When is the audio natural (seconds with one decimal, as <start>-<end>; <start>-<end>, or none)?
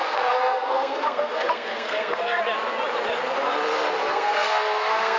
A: 2.4-4.1